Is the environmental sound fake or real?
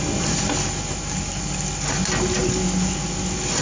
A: real